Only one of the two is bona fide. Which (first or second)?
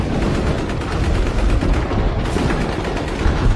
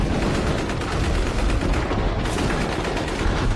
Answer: second